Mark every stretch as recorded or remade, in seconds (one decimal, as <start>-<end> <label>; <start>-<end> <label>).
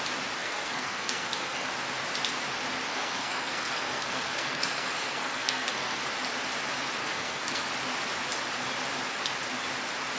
0.0-0.4 recorded; 0.4-1.7 remade; 1.7-2.9 recorded; 2.9-6.0 remade; 6.0-7.0 recorded; 7.0-7.7 remade; 7.7-10.2 recorded